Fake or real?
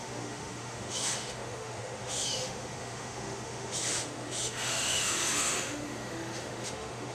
fake